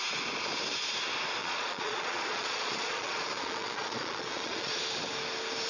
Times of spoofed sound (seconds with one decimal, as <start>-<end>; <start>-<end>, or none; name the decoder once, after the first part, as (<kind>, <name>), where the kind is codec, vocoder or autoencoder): 1.4-4.8 (vocoder, Vocos)